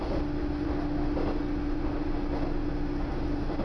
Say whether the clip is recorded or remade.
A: recorded